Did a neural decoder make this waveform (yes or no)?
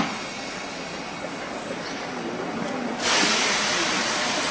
no